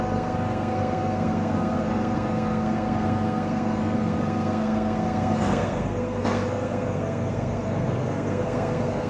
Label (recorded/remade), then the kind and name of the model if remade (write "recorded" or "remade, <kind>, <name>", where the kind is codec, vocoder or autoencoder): remade, codec, SNAC